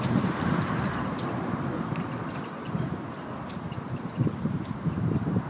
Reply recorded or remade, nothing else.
remade